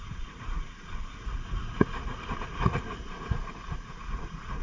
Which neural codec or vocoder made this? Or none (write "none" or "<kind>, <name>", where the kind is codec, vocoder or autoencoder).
vocoder, Vocos